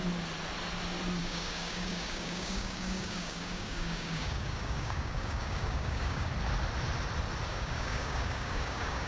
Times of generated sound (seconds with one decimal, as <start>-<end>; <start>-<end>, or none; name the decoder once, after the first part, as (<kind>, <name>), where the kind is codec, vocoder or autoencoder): 1.2-6.3 (codec, DAC); 7.5-9.1